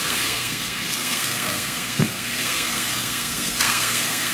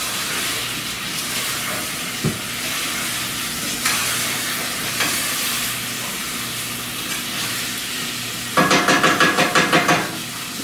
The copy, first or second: first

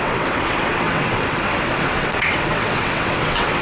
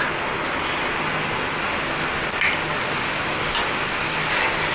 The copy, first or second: first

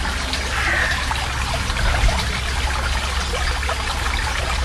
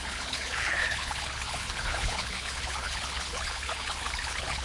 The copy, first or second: second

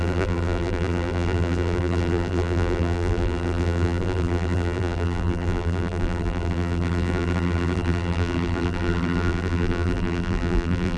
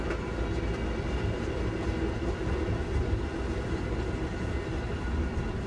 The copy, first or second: first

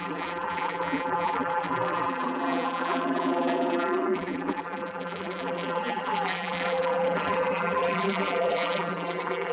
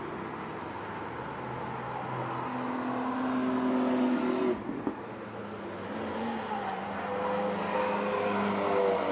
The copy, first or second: first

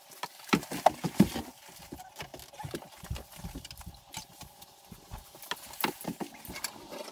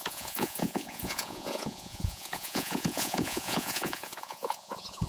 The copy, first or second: second